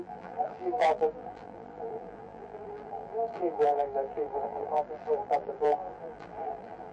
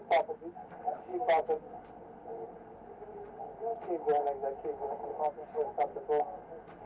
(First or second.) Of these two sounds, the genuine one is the second